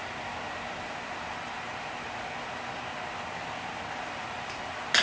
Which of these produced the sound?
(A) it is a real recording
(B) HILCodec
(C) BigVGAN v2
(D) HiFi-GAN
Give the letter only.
A